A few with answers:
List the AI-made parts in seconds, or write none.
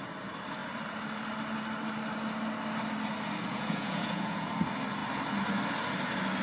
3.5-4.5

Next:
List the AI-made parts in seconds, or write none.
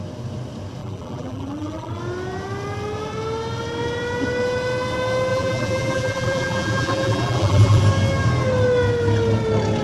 0.8-2.0; 5.3-7.8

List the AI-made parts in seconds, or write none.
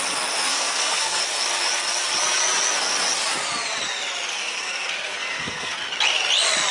0.5-1.2; 4.3-5.8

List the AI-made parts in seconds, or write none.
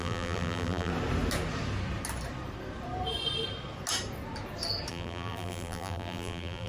0.0-0.9; 4.9-6.7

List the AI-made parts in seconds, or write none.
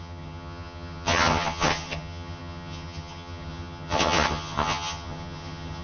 0.0-5.8